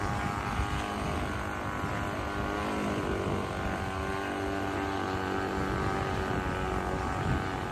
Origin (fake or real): real